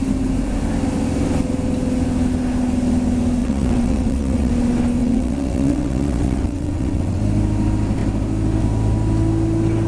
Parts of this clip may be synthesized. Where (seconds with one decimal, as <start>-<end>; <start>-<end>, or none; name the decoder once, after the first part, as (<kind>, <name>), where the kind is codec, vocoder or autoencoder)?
3.4-4.5 (vocoder, WaveNeXt); 5.0-7.2

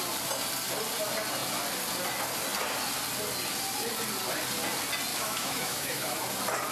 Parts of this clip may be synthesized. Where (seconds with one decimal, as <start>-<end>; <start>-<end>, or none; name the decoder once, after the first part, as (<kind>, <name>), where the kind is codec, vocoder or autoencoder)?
5.1-6.2 (autoencoder, DAC-VAE)

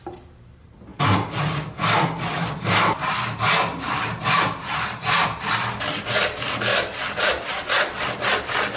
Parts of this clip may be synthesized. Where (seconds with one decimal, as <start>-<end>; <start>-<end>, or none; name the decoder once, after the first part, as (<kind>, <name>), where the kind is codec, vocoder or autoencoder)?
none

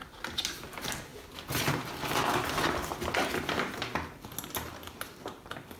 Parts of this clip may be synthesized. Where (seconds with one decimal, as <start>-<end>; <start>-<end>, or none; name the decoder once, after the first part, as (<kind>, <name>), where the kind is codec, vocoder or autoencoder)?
none

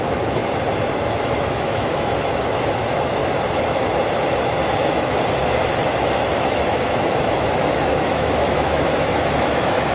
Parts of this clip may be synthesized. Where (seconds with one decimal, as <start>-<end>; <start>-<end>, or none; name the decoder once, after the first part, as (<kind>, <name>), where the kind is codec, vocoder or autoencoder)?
0.0-0.4 (autoencoder, DAC-VAE); 1.1-3.2; 4.9-5.4; 6.3-9.9

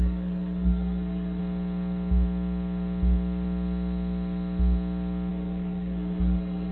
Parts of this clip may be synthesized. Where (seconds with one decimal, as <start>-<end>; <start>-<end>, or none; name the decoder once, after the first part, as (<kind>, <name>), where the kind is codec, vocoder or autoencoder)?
0.0-1.4 (codec, SNAC); 5.3-6.7

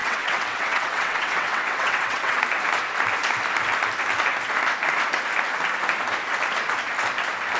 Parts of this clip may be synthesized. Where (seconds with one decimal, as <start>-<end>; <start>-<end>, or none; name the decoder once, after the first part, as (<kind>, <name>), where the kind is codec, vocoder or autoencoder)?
0.0-2.4 (vocoder, WaveNeXt)